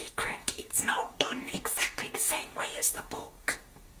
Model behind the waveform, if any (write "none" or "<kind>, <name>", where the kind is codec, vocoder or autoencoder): codec, DAC